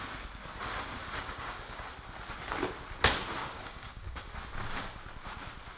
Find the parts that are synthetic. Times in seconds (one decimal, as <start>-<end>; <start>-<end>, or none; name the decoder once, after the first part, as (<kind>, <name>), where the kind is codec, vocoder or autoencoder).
1.0-1.9 (codec, DAC); 3.4-4.3